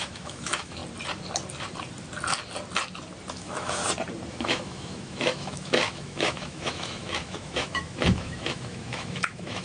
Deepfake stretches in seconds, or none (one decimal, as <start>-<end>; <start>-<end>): 0.0-0.8; 3.3-3.8; 4.3-9.6